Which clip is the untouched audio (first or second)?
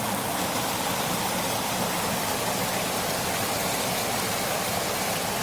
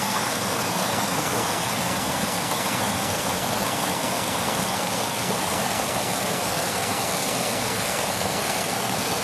first